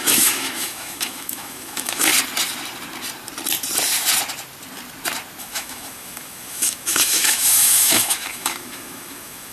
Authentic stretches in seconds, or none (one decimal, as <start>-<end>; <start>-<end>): 2.1-5.4

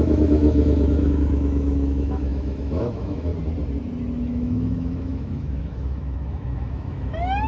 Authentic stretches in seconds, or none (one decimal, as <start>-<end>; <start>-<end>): 3.3-4.2